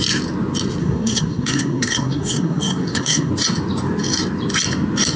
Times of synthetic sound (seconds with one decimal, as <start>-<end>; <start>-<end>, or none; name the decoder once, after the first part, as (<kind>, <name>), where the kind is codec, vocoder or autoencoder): 0.8-3.3 (codec, SNAC)